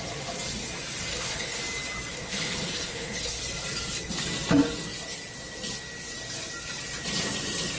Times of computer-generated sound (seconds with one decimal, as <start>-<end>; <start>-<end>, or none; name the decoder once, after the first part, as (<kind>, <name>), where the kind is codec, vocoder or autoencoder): 1.1-1.6 (codec, HILCodec); 2.1-3.4